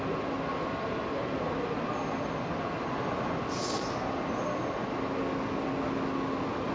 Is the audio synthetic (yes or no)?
no